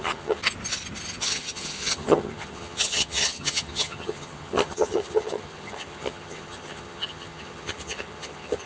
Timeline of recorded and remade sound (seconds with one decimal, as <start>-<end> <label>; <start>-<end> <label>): 0.0-0.4 remade; 0.4-1.2 recorded; 1.2-8.7 remade